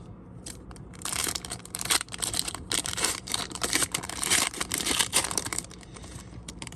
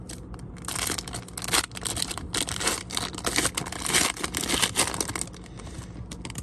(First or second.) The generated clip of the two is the first